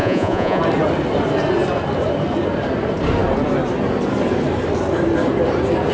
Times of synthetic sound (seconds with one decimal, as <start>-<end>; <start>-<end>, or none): 0.0-0.6